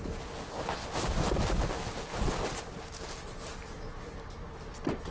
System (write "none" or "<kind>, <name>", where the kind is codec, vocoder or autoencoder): none